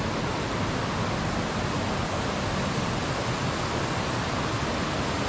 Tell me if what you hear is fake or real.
real